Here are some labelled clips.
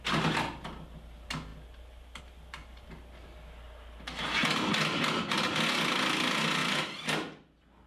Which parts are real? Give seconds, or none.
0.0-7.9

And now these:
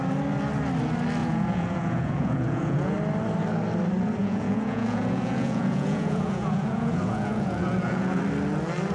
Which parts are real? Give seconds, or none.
0.0-1.2; 2.9-4.2; 8.2-8.9